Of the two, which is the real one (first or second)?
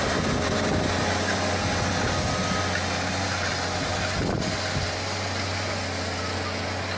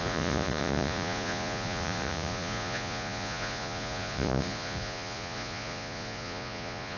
first